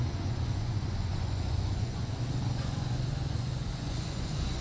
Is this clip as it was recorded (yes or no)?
no